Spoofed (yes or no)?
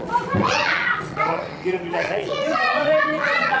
yes